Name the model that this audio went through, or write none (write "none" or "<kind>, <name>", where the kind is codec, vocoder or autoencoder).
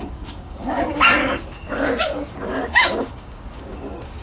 codec, DAC